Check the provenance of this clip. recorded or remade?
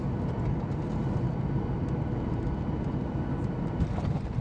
recorded